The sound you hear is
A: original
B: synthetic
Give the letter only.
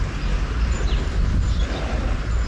A